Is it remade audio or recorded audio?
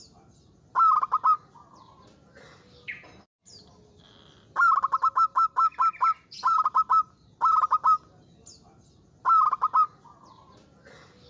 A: recorded